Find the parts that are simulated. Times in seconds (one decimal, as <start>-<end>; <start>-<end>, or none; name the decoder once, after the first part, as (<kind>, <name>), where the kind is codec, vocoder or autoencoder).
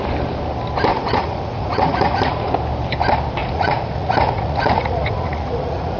0.9-2.5 (vocoder, Vocos); 3.4-6.0